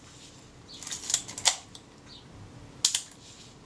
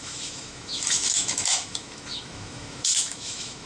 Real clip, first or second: first